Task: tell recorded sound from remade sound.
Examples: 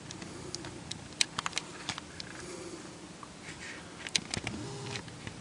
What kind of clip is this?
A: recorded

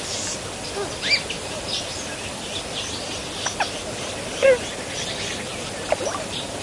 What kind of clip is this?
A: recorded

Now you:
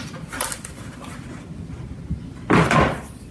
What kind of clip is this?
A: recorded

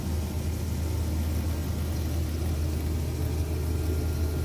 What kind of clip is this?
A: recorded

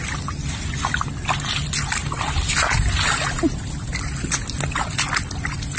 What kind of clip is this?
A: recorded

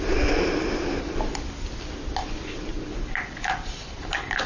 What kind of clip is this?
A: recorded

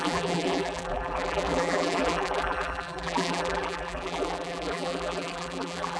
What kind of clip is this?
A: remade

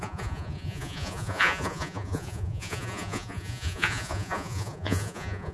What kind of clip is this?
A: remade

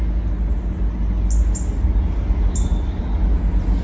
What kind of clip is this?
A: recorded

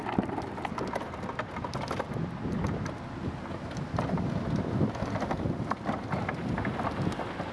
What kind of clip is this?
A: recorded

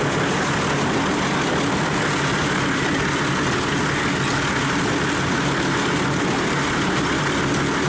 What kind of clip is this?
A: recorded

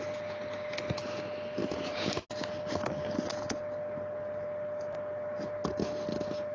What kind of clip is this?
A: recorded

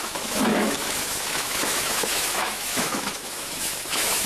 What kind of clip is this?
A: remade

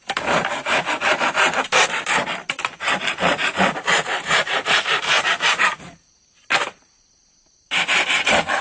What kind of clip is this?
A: remade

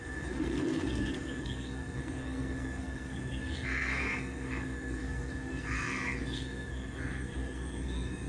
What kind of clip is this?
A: remade